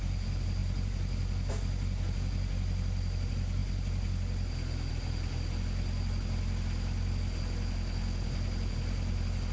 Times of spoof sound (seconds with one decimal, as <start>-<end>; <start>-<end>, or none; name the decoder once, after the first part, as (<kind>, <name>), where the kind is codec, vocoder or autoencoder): none